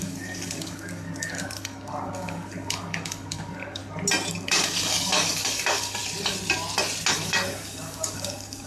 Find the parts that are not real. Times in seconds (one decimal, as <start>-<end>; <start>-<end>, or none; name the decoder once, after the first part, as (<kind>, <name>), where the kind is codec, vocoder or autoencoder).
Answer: 0.0-3.8 (codec, DAC); 4.3-6.0; 7.1-8.7